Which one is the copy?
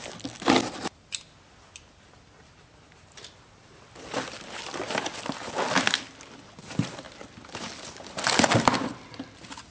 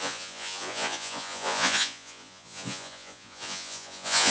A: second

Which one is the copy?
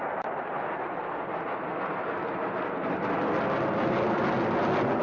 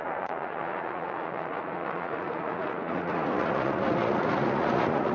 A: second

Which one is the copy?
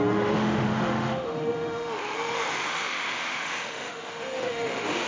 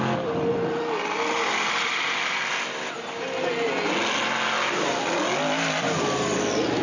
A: first